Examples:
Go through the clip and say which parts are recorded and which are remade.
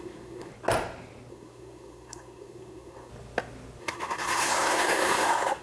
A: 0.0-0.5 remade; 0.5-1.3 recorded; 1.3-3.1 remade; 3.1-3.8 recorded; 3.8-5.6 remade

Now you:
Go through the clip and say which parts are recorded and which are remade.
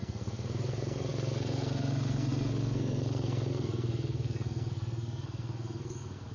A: 0.0-6.3 remade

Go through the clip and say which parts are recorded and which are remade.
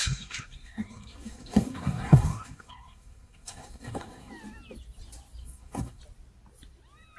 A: 0.0-4.3 remade; 4.3-5.4 recorded; 5.4-6.0 remade; 6.0-7.2 recorded